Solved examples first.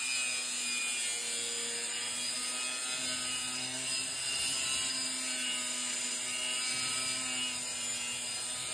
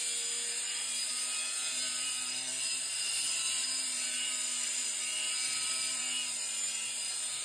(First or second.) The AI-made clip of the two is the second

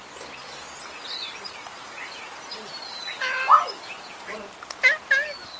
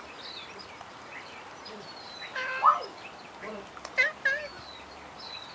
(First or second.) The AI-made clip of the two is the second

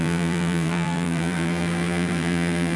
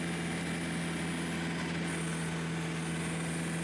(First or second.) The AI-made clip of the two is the first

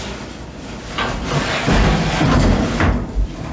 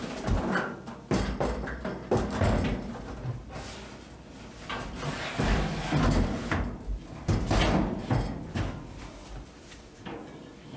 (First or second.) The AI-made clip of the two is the first